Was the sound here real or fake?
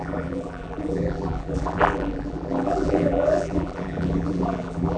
fake